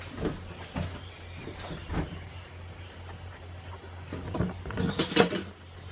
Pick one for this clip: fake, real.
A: real